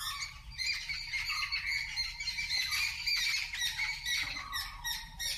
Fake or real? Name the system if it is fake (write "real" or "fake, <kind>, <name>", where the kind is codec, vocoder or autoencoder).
real